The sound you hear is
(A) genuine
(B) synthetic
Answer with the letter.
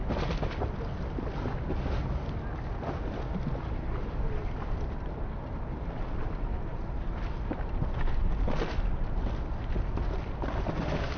A